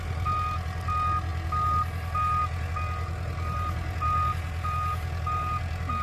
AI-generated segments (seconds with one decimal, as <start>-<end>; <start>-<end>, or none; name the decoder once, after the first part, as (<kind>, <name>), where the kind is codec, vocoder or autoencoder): none